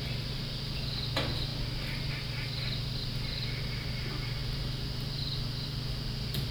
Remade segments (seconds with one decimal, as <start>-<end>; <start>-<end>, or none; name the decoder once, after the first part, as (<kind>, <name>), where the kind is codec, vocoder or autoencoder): none